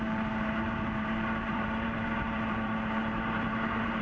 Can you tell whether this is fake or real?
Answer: fake